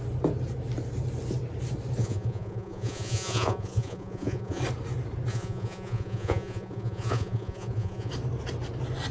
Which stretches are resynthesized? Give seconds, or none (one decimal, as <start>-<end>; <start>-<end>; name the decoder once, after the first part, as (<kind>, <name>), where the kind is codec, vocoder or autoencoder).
2.0-4.6 (vocoder, Vocos); 5.3-8.1